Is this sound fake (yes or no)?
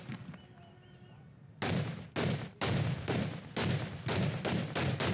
no